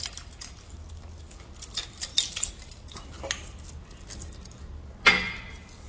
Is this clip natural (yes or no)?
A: yes